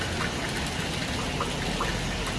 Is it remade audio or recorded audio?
recorded